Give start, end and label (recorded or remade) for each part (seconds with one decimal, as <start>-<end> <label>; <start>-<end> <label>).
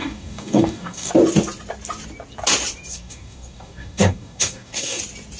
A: 0.0-1.1 remade; 1.1-2.9 recorded; 2.9-5.0 remade; 5.0-5.4 recorded